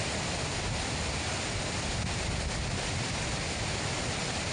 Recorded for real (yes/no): yes